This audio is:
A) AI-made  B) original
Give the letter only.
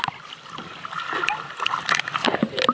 B